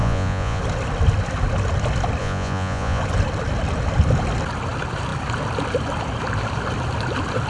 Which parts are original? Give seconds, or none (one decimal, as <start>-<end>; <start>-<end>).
0.6-2.2; 3.0-7.5